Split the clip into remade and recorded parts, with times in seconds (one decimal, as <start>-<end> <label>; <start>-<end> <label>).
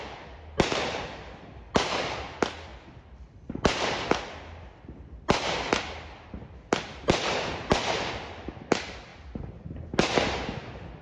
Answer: 0.0-11.0 recorded